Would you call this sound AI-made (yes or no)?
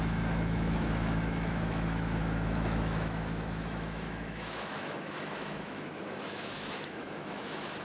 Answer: yes